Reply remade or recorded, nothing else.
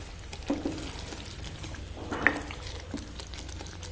recorded